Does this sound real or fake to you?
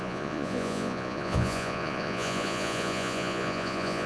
fake